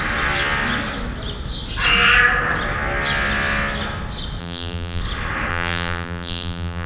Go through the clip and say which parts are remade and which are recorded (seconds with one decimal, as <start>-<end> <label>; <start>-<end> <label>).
0.0-4.4 recorded; 4.4-5.0 remade; 5.0-5.5 recorded; 5.5-6.9 remade